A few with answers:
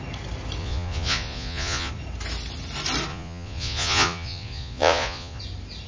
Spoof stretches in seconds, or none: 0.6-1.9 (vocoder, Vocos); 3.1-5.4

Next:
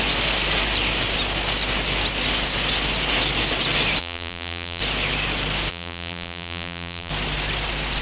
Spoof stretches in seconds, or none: 4.0-4.8 (vocoder, BigVGAN v2); 5.7-7.1